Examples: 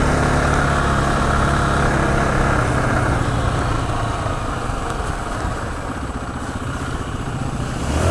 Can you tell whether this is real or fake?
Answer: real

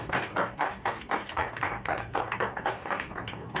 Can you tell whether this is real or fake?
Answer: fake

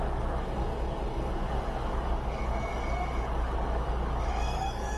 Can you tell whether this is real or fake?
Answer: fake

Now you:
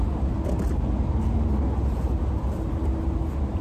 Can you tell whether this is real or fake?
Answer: real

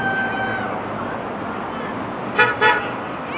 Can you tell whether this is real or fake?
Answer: real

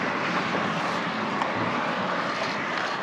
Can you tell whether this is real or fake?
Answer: real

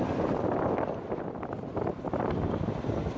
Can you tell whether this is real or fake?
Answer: real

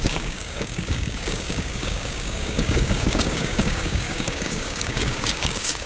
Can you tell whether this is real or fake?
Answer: fake